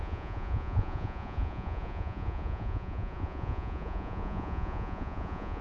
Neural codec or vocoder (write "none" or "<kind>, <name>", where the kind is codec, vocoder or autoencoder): vocoder, Vocos